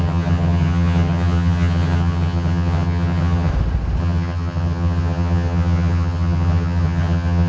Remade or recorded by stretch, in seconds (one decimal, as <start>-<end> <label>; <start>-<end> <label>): 0.0-3.5 remade; 3.5-4.0 recorded; 4.0-7.5 remade